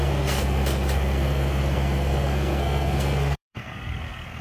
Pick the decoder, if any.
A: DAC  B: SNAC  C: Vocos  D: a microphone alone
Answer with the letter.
B